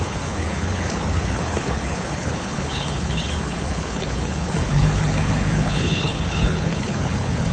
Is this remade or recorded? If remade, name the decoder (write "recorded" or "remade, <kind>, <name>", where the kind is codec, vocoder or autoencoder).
remade, codec, HILCodec